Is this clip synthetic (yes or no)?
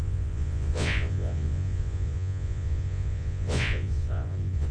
yes